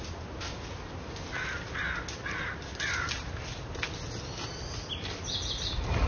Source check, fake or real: real